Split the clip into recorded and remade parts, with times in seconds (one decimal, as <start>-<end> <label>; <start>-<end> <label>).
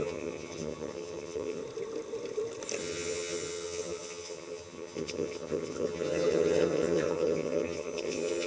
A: 0.0-1.6 remade; 1.6-2.8 recorded; 2.8-8.5 remade